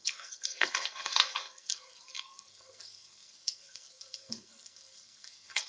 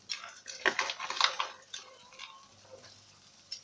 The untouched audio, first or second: second